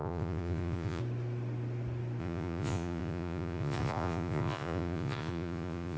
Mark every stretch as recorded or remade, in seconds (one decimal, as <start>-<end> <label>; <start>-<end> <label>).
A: 0.0-1.0 remade; 1.0-2.2 recorded; 2.2-6.0 remade